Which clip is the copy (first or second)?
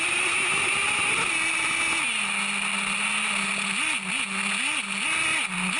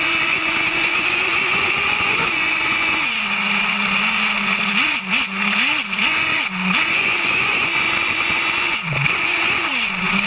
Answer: second